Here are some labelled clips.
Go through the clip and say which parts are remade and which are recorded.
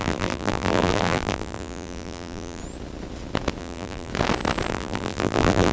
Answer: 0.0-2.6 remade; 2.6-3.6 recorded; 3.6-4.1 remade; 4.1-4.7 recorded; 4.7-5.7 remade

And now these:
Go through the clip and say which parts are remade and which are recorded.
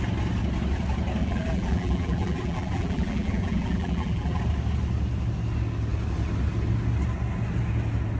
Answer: 0.0-1.2 recorded; 1.2-4.4 remade; 4.4-8.2 recorded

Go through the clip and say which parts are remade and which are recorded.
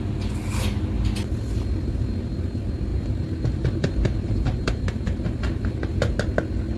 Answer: 0.0-2.9 recorded; 2.9-6.2 remade; 6.2-6.8 recorded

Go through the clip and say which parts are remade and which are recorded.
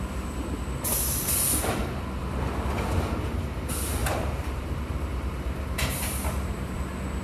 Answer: 0.0-4.0 recorded; 4.0-6.8 remade; 6.8-7.2 recorded